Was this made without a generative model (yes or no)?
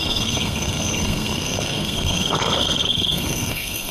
no